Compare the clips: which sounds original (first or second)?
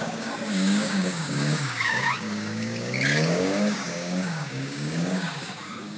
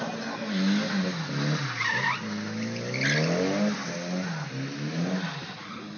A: second